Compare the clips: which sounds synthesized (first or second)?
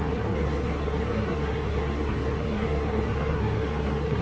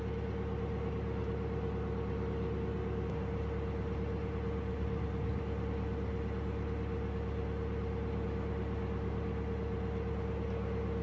first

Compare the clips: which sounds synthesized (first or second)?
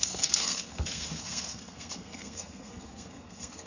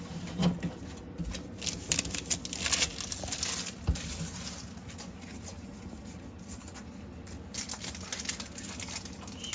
first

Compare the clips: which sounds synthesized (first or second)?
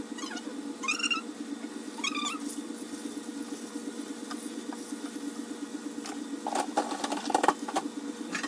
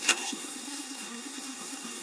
second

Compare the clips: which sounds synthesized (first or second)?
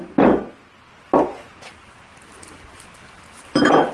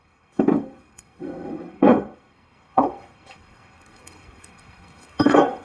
second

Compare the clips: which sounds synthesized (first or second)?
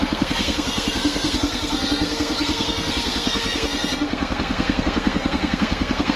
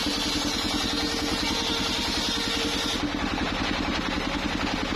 first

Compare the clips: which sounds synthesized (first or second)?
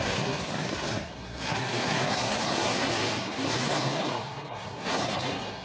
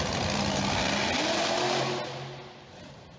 first